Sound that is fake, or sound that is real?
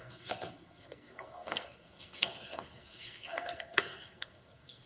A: fake